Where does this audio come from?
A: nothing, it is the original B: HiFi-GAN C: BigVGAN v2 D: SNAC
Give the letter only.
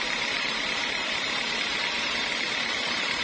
C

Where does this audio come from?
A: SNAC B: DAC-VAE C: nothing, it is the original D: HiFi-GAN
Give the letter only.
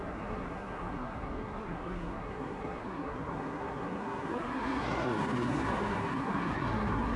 A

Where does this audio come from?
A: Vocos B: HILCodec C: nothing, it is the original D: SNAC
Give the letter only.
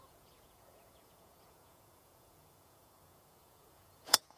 A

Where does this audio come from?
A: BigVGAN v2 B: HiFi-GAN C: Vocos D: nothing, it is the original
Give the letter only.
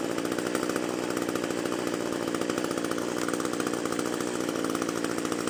D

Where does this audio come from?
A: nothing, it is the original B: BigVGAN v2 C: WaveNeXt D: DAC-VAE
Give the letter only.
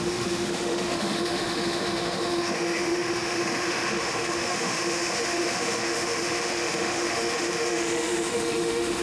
D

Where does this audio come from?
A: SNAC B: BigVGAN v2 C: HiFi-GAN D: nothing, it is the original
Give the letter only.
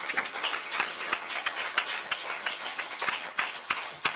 C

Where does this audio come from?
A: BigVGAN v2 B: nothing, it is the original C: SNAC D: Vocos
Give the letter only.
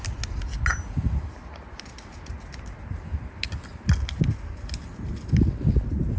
B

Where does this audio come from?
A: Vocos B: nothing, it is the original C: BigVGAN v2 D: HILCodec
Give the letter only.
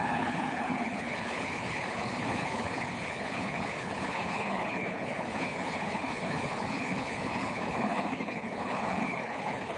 D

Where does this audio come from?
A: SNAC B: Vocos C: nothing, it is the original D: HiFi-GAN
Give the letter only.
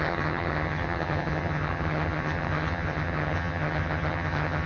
D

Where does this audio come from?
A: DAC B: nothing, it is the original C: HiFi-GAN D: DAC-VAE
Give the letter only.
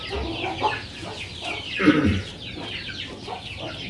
B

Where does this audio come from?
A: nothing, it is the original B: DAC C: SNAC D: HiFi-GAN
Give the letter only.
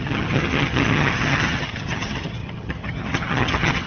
D